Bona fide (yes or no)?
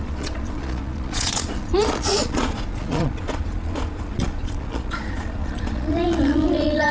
no